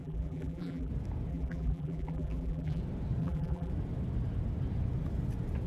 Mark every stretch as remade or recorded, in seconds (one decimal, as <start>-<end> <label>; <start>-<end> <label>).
0.0-0.9 remade; 0.9-1.3 recorded; 1.3-2.8 remade; 2.8-3.2 recorded; 3.2-3.7 remade; 3.7-5.7 recorded